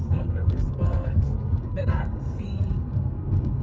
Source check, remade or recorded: remade